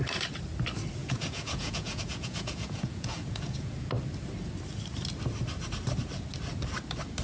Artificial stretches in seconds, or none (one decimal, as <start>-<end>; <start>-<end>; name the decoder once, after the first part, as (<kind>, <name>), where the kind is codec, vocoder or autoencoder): 1.0-3.9 (vocoder, Vocos)